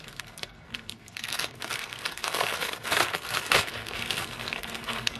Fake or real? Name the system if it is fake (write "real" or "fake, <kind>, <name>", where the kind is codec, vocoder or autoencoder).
fake, codec, SNAC